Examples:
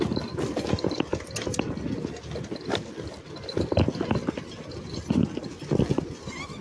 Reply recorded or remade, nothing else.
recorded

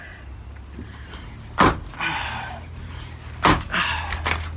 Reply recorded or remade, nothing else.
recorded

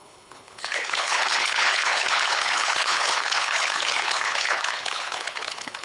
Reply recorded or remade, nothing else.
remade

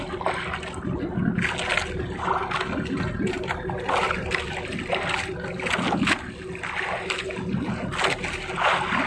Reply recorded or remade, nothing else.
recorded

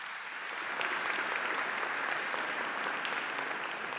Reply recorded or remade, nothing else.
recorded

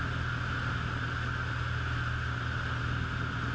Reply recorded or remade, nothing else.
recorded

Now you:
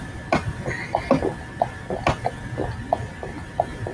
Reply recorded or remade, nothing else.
recorded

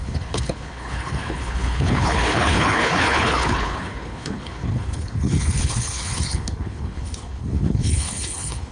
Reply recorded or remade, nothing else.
remade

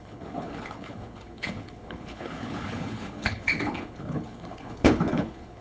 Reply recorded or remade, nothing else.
remade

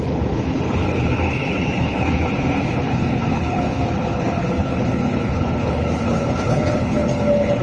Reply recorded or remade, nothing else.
remade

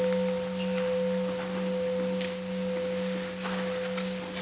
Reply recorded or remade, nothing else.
recorded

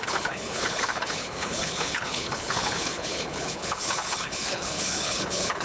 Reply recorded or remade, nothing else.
remade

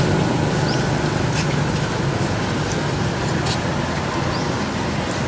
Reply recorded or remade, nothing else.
recorded